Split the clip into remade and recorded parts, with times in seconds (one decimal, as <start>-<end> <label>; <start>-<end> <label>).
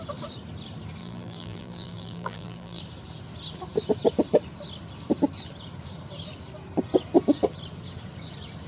0.0-1.0 recorded; 1.0-2.8 remade; 2.8-8.7 recorded